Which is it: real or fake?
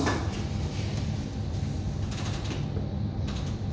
real